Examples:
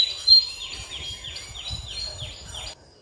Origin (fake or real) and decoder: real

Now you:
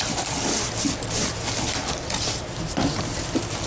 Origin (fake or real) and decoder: real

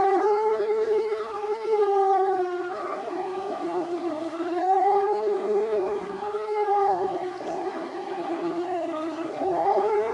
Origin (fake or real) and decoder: fake, codec, SNAC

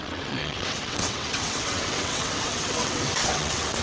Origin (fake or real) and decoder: fake, vocoder, WaveNeXt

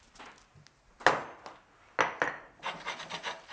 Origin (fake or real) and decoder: real